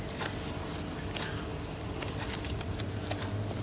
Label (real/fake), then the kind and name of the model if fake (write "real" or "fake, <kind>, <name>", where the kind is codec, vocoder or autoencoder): real